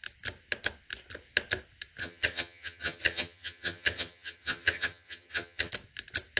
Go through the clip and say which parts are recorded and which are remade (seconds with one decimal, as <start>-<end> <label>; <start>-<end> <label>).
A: 0.0-2.0 recorded; 2.0-5.7 remade; 5.7-6.4 recorded